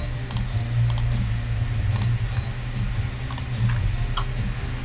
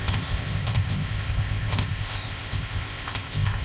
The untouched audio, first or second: first